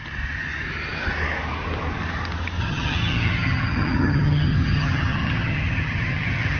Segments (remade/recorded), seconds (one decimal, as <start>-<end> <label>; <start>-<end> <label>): 0.0-2.6 recorded; 2.6-6.6 remade